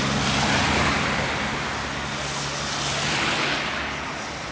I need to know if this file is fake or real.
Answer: real